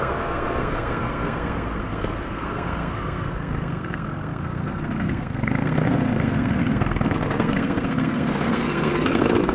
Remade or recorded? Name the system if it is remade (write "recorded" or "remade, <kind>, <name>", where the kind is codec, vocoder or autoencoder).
remade, codec, SNAC